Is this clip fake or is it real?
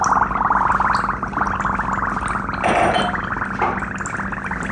real